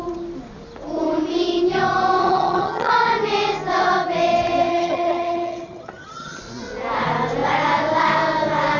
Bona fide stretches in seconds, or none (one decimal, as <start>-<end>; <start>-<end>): 0.0-2.2; 2.9-4.7; 6.4-8.8